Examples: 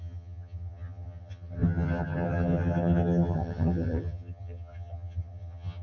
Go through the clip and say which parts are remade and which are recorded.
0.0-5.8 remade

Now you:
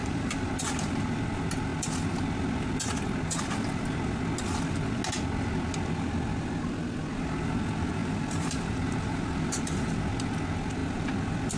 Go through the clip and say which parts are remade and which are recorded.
0.0-0.5 remade; 0.5-8.0 recorded; 8.0-9.9 remade; 9.9-11.6 recorded

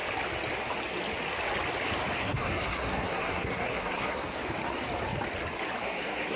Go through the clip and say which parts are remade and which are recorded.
0.0-2.2 recorded; 2.2-4.4 remade; 4.4-5.8 recorded; 5.8-6.4 remade

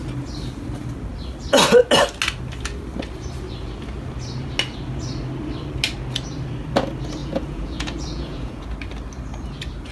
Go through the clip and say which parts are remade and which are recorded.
0.0-7.2 recorded; 7.2-8.6 remade; 8.6-9.9 recorded

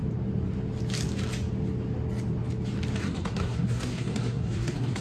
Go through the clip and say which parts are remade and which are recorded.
0.0-3.0 recorded; 3.0-5.0 remade

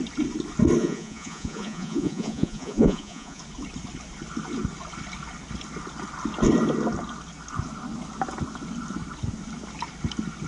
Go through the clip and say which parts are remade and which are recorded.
0.0-0.8 recorded; 0.8-3.4 remade; 3.4-10.5 recorded

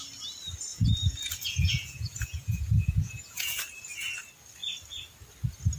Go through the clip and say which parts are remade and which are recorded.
0.0-0.7 recorded; 0.7-3.6 remade; 3.6-5.8 recorded

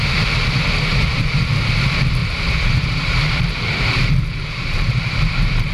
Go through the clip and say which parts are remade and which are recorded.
0.0-0.9 recorded; 0.9-1.4 remade; 1.4-2.2 recorded; 2.2-5.7 remade